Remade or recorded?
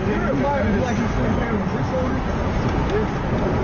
recorded